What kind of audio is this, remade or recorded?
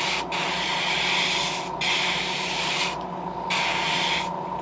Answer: recorded